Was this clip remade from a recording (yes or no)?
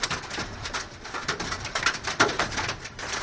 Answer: yes